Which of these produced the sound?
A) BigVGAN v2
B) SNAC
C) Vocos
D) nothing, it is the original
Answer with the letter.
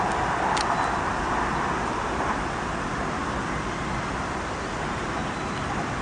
D